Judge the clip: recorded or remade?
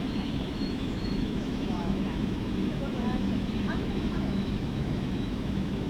remade